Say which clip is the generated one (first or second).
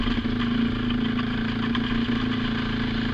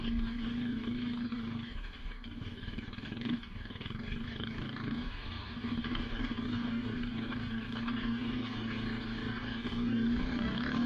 second